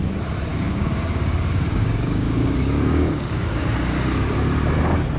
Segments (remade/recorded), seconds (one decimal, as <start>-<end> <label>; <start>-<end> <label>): 0.0-0.5 recorded; 0.5-3.6 remade; 3.6-5.2 recorded